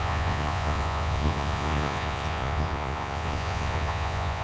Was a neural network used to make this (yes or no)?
yes